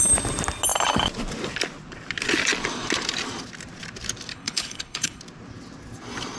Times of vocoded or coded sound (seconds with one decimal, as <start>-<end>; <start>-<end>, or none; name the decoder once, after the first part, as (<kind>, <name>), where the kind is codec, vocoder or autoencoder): 4.3-5.2 (codec, HILCodec)